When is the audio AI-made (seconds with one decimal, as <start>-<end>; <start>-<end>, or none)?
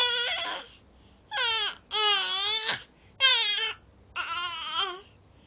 none